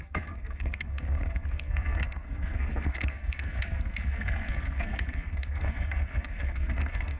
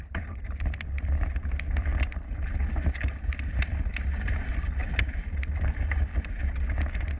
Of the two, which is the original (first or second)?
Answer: second